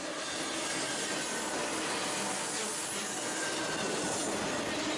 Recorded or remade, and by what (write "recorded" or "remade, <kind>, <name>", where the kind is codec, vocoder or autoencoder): recorded